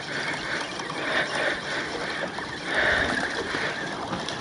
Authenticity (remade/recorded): recorded